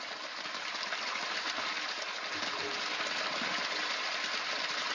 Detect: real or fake real